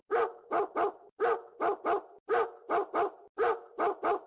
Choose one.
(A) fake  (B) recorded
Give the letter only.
B